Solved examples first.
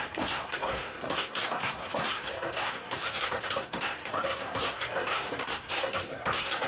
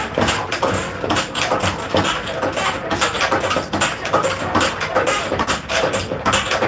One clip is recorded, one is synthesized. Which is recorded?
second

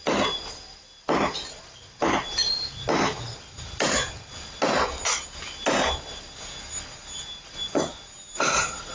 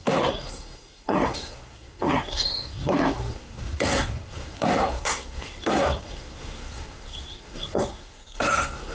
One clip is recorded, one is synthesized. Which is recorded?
first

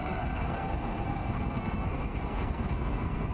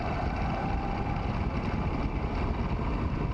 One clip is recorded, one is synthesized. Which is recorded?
second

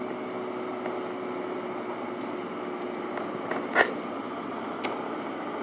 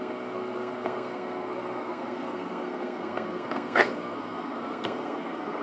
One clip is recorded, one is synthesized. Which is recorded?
first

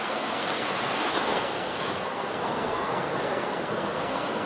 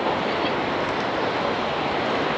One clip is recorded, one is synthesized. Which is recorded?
second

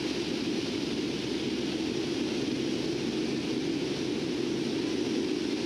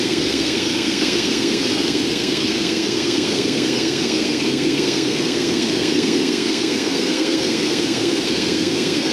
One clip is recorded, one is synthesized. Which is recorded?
first